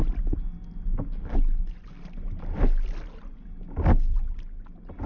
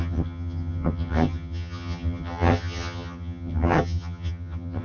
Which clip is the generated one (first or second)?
second